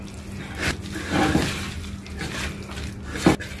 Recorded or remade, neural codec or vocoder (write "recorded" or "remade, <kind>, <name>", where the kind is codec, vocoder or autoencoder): recorded